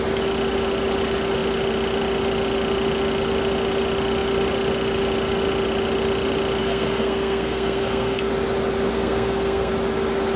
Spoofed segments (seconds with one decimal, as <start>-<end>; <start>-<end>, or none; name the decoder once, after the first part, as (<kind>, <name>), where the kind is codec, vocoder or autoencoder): 6.6-8.3 (codec, SNAC); 8.9-9.7